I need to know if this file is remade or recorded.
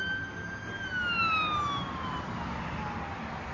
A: recorded